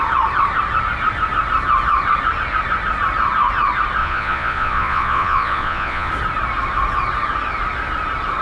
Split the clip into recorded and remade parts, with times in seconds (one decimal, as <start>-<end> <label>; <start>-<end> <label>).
0.0-4.0 recorded; 4.0-6.1 remade; 6.1-8.4 recorded